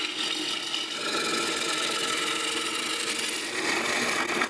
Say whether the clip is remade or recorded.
recorded